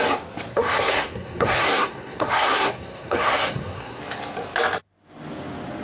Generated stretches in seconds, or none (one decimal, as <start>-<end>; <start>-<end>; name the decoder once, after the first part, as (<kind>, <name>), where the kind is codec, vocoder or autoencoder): 0.5-4.0 (codec, SNAC)